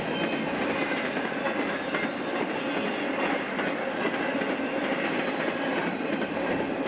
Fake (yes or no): no